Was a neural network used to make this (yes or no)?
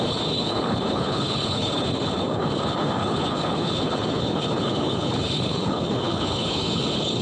yes